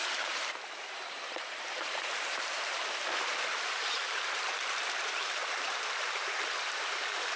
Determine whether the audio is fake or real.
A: fake